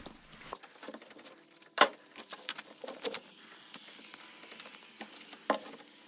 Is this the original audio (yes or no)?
yes